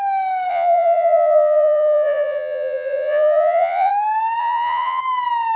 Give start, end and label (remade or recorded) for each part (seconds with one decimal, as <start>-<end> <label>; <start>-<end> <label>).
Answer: 0.0-0.5 recorded; 0.5-3.9 remade; 3.9-4.4 recorded; 4.4-5.0 remade; 5.0-5.6 recorded